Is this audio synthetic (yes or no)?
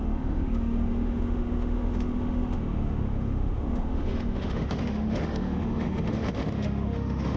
yes